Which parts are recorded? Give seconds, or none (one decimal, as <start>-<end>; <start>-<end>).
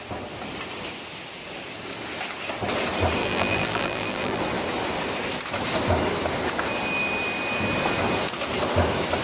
0.0-3.2; 4.4-9.2